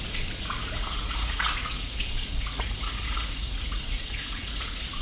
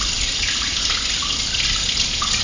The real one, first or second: second